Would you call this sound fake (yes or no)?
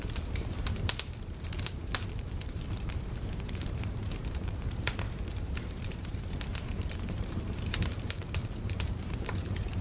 yes